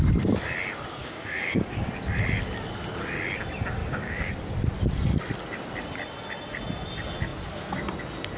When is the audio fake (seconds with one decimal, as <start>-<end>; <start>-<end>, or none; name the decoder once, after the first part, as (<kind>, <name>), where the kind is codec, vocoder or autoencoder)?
1.0-1.9 (codec, DAC); 3.8-4.3